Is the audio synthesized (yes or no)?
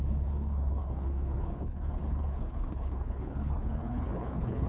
yes